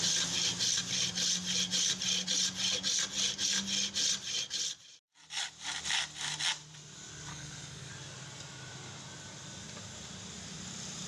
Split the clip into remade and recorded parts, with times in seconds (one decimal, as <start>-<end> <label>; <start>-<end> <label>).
0.0-7.3 recorded; 7.3-7.9 remade; 7.9-11.1 recorded